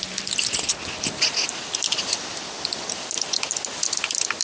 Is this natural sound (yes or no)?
yes